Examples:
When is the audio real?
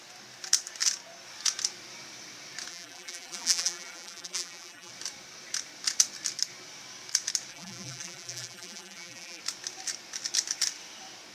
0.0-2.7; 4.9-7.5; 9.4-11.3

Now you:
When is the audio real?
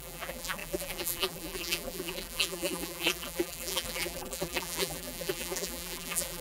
none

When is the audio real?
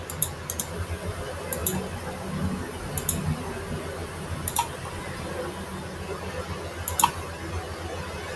0.0-4.0; 5.3-8.4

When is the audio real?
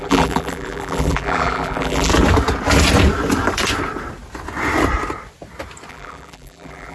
2.1-5.9